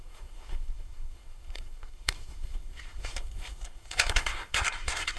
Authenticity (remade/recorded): remade